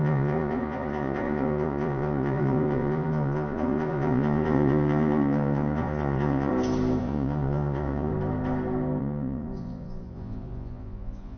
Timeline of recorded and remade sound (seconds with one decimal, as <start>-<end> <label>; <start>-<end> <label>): 0.0-6.5 remade; 6.5-7.0 recorded; 7.0-8.1 remade; 8.1-9.0 recorded; 9.0-11.4 remade